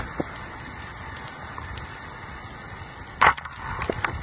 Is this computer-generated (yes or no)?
no